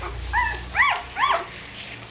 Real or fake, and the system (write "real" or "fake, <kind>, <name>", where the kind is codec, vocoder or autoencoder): real